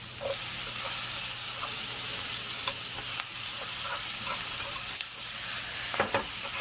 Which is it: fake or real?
real